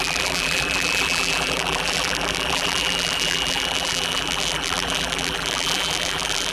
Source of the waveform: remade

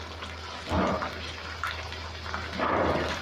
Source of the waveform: recorded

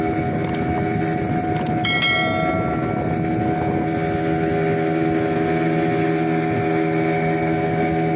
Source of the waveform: recorded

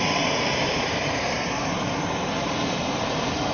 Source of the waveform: remade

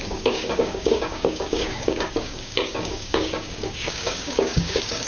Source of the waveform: remade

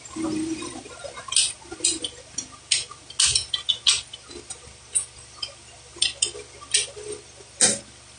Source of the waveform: recorded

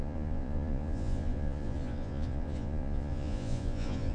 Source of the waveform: remade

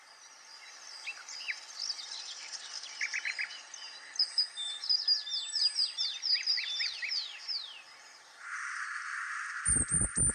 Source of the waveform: remade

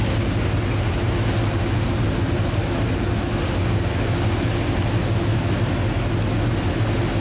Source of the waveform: recorded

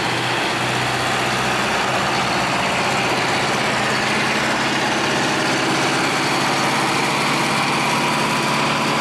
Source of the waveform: recorded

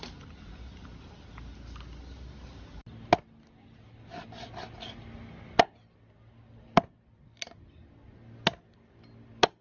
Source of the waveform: recorded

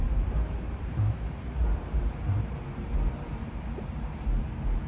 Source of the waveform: remade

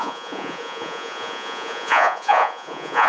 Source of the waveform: remade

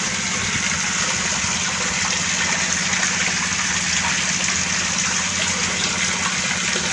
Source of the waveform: recorded